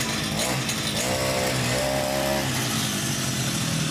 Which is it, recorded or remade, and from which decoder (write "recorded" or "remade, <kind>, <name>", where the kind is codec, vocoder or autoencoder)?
recorded